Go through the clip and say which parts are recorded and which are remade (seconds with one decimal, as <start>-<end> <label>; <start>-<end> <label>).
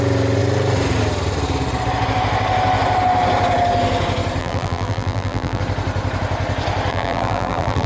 0.0-4.4 recorded; 4.4-5.6 remade; 5.6-6.9 recorded; 6.9-7.9 remade